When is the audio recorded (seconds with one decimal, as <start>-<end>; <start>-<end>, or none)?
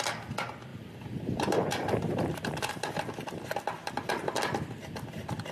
0.0-0.7; 3.0-3.8; 4.3-5.5